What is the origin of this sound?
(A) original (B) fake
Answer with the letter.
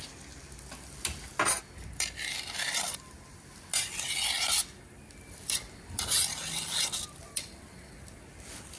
A